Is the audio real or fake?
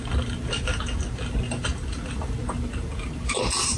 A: real